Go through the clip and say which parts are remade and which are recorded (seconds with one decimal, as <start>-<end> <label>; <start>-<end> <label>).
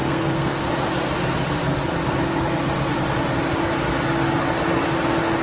0.0-0.6 remade; 0.6-5.4 recorded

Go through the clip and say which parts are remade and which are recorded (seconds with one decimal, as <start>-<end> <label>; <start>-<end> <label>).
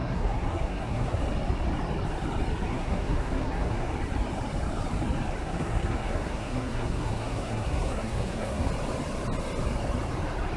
0.0-1.2 remade; 1.2-2.7 recorded; 2.7-3.9 remade; 3.9-5.4 recorded; 5.4-8.7 remade; 8.7-10.6 recorded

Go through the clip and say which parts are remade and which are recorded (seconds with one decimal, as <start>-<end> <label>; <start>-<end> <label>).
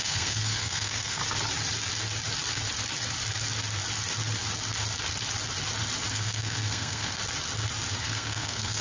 0.0-1.2 remade; 1.2-6.1 recorded; 6.1-7.2 remade; 7.2-8.0 recorded; 8.0-8.8 remade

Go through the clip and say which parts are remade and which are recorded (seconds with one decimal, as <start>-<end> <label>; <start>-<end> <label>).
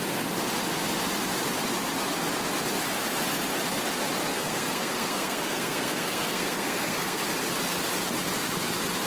0.0-4.3 recorded; 4.3-7.2 remade; 7.2-9.1 recorded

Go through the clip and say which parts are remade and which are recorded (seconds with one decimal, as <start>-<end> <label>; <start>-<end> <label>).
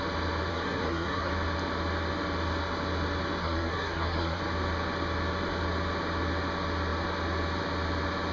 0.0-0.5 recorded; 0.5-1.3 remade; 1.3-3.4 recorded; 3.4-4.4 remade; 4.4-8.3 recorded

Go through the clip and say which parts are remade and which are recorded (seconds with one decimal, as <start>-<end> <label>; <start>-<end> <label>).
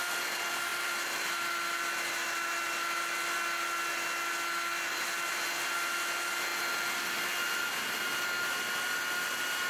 0.0-9.7 recorded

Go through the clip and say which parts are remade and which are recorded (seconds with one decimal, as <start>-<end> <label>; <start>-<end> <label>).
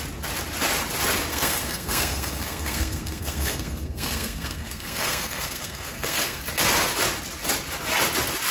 0.0-1.3 recorded; 1.3-6.4 remade; 6.4-8.5 recorded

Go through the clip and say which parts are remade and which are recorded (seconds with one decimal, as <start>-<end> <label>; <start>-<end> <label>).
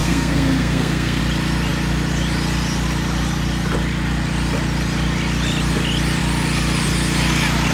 0.0-1.2 remade; 1.2-7.7 recorded